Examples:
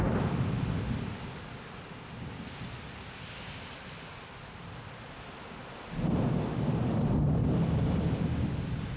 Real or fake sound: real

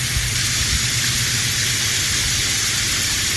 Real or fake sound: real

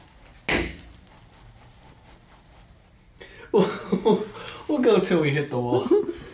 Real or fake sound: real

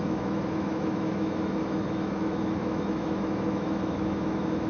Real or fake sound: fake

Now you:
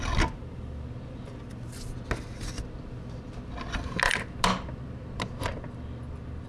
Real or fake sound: real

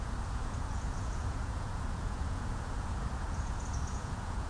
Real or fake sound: fake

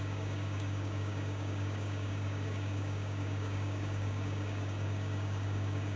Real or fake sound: fake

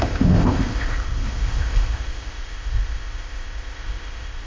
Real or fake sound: fake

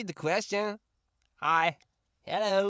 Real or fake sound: fake